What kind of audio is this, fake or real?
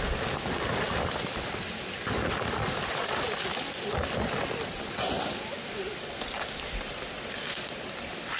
real